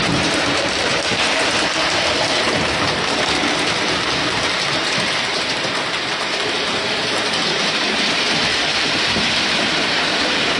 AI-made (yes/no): yes